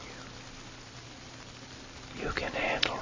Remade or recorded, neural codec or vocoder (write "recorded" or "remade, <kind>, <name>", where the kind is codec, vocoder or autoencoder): recorded